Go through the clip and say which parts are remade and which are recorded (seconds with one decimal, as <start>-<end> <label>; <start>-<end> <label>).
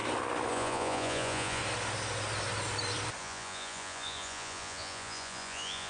0.0-0.5 recorded; 0.5-1.6 remade; 1.6-3.2 recorded; 3.2-5.9 remade